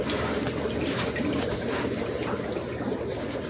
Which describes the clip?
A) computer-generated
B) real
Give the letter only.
A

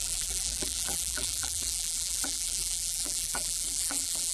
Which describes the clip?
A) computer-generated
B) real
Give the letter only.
A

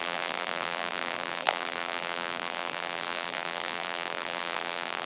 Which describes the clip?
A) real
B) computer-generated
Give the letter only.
B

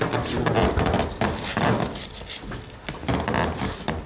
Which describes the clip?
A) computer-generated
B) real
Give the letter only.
B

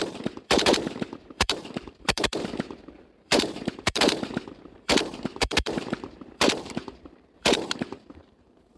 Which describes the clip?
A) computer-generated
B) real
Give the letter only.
A